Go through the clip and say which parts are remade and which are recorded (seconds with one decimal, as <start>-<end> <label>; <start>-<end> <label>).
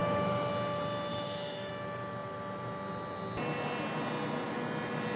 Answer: 0.0-0.5 remade; 0.5-1.1 recorded; 1.1-1.7 remade; 1.7-5.2 recorded